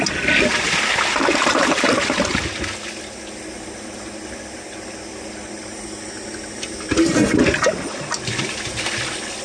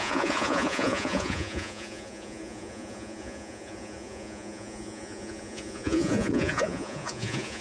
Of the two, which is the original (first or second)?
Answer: first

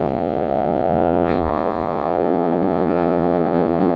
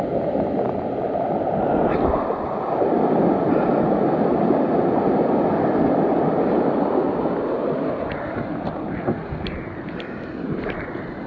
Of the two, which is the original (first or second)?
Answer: second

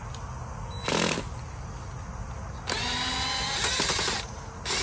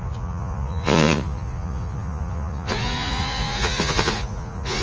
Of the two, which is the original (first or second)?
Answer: first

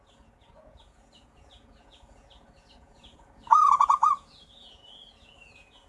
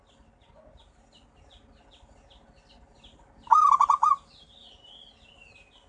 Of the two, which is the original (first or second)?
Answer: second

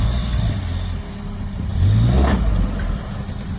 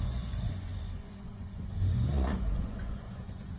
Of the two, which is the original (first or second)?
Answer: first